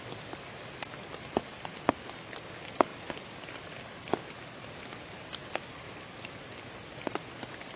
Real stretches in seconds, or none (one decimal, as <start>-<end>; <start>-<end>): 0.0-7.8